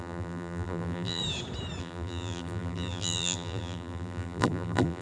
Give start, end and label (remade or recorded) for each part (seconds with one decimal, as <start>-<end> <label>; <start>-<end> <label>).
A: 0.0-1.2 remade; 1.2-1.8 recorded; 1.8-5.0 remade